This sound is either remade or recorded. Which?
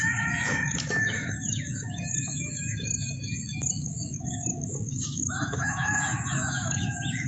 remade